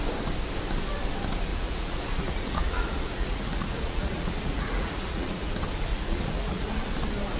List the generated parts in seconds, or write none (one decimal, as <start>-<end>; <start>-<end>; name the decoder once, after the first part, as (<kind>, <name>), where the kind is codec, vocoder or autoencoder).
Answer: 1.5-5.5 (vocoder, Vocos); 5.9-6.9